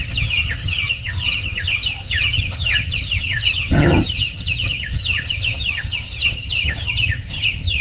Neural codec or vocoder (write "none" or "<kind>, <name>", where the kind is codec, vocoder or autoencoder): vocoder, HiFi-GAN